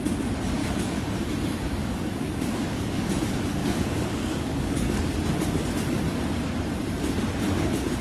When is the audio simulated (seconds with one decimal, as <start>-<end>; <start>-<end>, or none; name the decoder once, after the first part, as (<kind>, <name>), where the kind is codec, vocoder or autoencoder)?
0.6-1.1 (codec, DAC); 1.8-3.1; 3.6-5.0